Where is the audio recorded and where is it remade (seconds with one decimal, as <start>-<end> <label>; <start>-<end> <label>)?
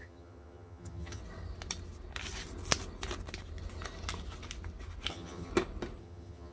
0.0-1.2 remade; 1.2-5.1 recorded; 5.1-5.5 remade; 5.5-6.0 recorded; 6.0-6.5 remade